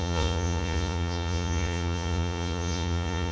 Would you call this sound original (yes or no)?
no